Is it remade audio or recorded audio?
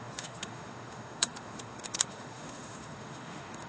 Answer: remade